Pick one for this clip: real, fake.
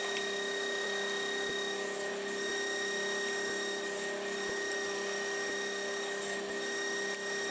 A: real